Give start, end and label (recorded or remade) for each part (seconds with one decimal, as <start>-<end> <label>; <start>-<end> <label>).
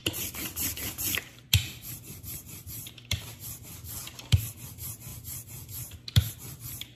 0.0-2.8 remade; 2.8-7.0 recorded